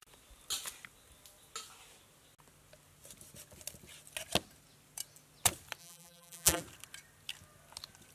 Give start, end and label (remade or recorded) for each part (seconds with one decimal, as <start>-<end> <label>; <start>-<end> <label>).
0.0-5.8 recorded; 5.8-6.6 remade; 6.6-8.1 recorded